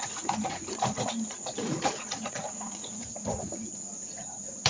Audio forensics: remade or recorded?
remade